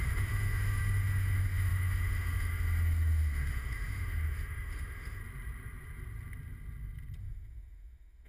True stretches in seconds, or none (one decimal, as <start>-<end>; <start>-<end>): 5.2-7.2